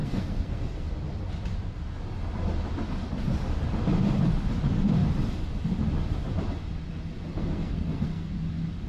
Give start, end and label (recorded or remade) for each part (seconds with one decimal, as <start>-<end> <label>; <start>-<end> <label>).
0.0-0.9 remade; 0.9-7.3 recorded; 7.3-8.3 remade; 8.3-8.9 recorded